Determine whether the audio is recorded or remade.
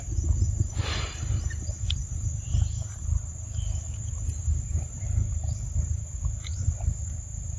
recorded